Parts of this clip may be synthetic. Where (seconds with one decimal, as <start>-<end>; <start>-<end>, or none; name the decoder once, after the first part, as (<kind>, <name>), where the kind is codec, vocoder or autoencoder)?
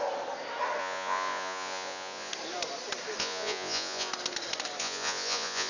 0.8-2.3 (vocoder, Vocos); 3.2-4.1; 4.8-5.7